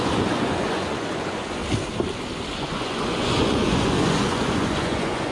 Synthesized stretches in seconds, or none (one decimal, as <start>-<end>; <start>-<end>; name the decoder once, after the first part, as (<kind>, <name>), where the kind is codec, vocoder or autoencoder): 0.0-1.6 (vocoder, Vocos); 2.6-5.3